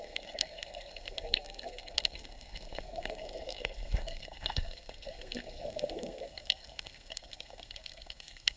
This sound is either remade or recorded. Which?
remade